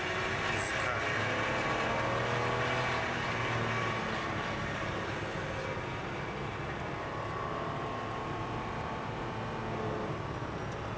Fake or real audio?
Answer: real